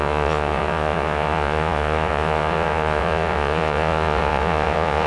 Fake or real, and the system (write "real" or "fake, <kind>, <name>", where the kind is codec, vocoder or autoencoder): fake, vocoder, Vocos